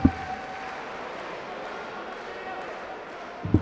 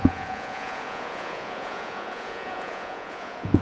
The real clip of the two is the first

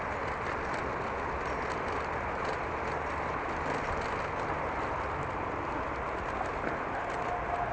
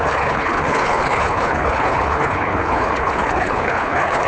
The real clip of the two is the first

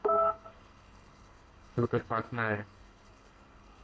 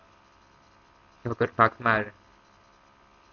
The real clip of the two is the second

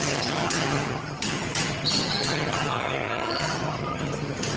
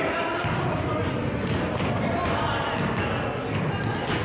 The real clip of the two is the second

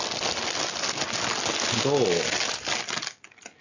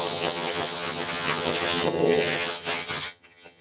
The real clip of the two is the first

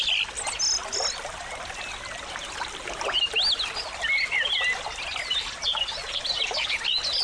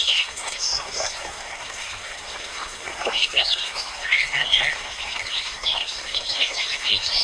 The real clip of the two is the first